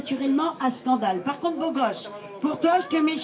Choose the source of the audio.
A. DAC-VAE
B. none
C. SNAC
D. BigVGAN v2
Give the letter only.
A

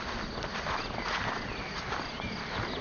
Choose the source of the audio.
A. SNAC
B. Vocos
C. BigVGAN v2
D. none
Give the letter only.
D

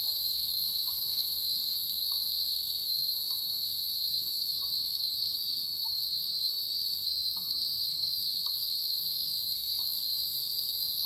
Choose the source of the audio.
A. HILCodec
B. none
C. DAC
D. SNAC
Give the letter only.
D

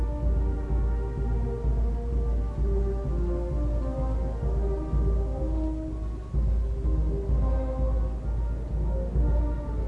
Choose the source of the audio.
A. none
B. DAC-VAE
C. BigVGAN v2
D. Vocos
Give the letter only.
A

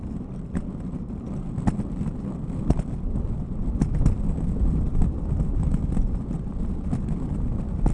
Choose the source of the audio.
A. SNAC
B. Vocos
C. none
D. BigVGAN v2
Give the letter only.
D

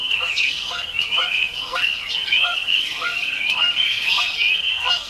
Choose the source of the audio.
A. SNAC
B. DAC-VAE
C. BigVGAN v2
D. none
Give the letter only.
A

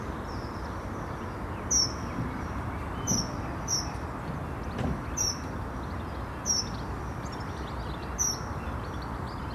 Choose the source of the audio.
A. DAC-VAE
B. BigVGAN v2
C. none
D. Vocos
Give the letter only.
C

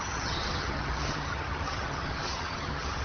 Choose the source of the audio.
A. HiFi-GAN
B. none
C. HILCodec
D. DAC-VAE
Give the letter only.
A